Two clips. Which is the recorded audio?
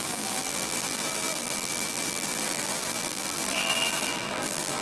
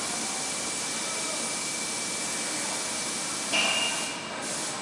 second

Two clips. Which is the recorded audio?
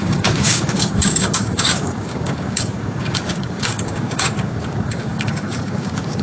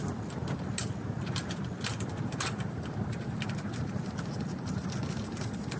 second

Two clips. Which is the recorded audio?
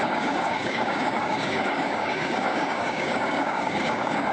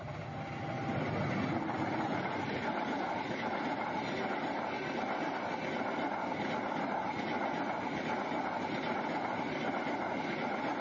second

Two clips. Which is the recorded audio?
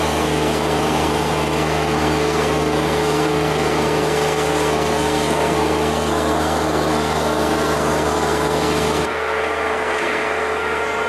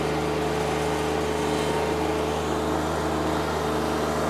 second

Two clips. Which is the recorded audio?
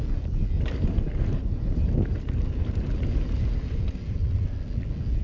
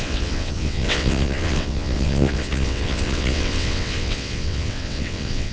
first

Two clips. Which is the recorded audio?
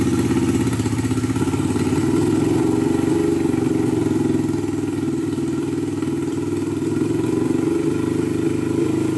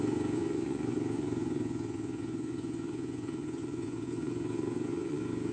first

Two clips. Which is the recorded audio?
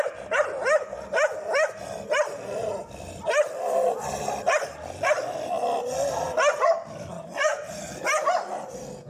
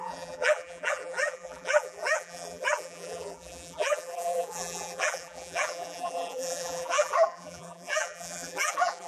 first